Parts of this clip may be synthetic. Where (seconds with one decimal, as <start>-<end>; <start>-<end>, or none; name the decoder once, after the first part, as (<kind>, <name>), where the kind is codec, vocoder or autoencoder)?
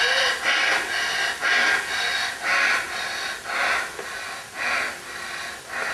none